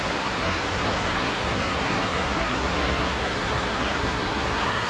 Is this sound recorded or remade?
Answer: remade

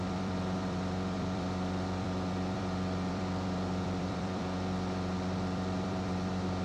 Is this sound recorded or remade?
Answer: remade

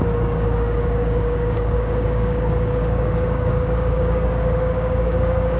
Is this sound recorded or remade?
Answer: remade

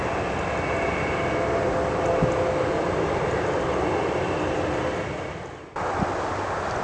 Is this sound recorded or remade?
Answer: recorded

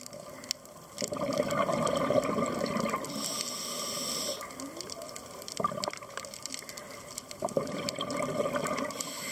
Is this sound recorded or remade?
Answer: recorded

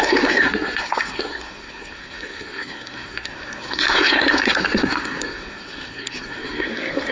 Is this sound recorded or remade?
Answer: remade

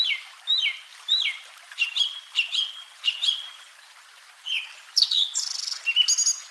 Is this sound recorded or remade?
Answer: recorded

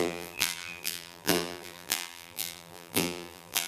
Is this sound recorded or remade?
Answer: remade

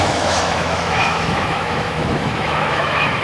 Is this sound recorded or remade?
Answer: remade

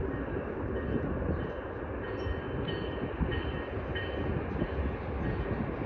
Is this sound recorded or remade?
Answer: recorded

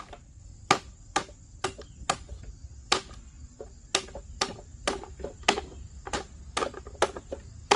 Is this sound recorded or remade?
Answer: recorded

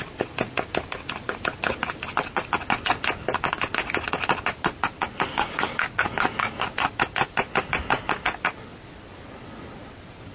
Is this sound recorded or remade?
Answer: recorded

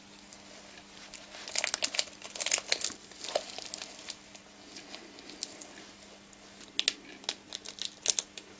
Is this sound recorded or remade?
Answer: recorded